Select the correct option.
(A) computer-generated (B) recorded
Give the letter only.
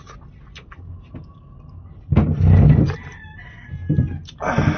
B